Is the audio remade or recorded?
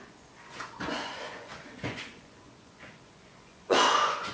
remade